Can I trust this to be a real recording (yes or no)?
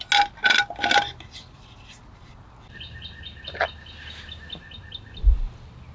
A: yes